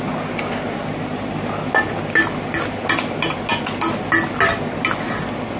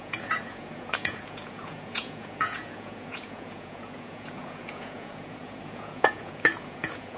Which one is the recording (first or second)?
first